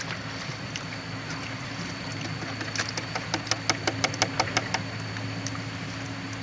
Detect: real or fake real